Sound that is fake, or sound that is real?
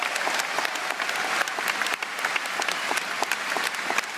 real